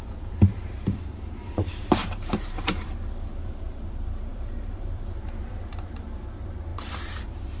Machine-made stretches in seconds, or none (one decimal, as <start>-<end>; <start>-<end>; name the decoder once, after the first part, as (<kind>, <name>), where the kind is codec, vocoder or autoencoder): 0.0-7.6 (vocoder, BigVGAN v2)